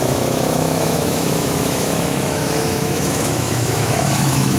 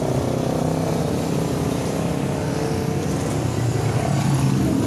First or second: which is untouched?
second